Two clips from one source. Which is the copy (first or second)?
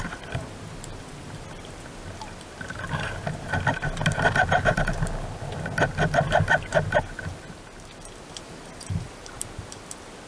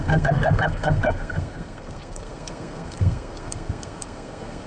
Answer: second